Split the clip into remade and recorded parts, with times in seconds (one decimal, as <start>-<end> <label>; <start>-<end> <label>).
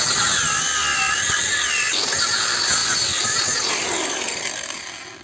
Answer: 0.0-5.2 recorded